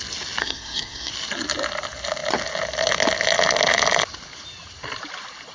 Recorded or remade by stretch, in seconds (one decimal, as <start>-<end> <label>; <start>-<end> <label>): 0.0-0.4 recorded; 0.4-1.1 remade; 1.1-5.5 recorded